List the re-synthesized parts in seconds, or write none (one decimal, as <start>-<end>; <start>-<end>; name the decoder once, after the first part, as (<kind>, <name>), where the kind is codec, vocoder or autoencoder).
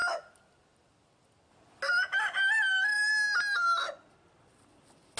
none